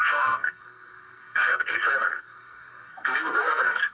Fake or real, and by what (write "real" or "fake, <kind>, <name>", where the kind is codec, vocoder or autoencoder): fake, codec, SNAC